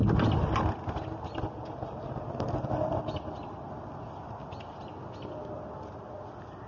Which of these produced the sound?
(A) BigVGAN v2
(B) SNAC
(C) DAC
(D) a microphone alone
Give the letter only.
D